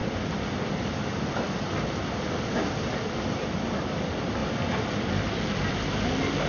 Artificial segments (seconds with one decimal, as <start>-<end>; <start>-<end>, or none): none